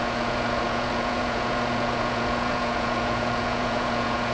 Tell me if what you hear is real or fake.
fake